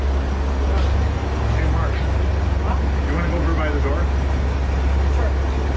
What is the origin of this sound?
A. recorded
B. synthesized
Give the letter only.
A